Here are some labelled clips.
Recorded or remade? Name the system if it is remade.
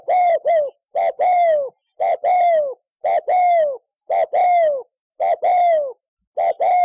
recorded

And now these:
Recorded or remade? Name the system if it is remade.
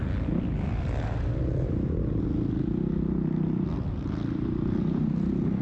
recorded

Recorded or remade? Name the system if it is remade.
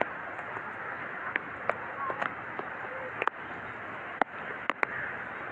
recorded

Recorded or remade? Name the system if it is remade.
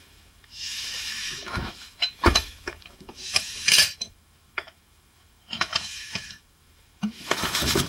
remade, autoencoder, DAC-VAE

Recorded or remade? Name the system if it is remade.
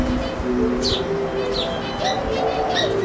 recorded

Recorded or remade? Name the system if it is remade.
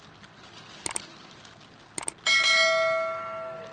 recorded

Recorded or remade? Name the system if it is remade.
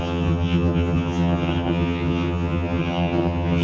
remade, vocoder, HiFi-GAN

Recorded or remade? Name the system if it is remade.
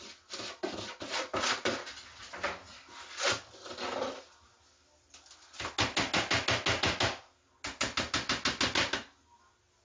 recorded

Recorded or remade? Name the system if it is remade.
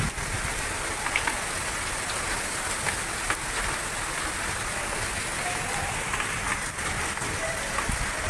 recorded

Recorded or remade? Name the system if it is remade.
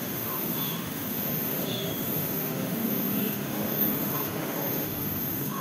remade, autoencoder, DAC-VAE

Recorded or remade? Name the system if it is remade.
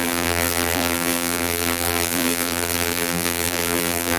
remade, vocoder, BigVGAN v2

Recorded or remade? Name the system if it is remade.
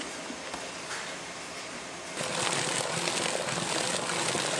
recorded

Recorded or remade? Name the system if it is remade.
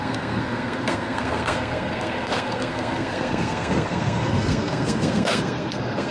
remade, codec, SNAC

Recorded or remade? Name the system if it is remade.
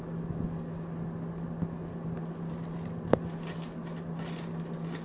recorded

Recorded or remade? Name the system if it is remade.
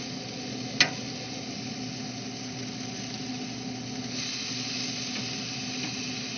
recorded